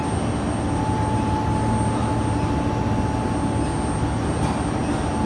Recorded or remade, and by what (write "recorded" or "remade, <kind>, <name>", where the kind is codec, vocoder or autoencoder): recorded